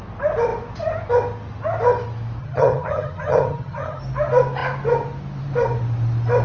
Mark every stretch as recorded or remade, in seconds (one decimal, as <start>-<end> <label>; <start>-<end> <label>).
0.0-2.4 recorded; 2.4-4.0 remade; 4.0-6.4 recorded